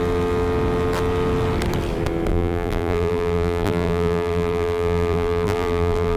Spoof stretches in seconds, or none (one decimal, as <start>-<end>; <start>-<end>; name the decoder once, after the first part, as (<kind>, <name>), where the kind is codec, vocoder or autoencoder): 2.3-6.2 (vocoder, BigVGAN v2)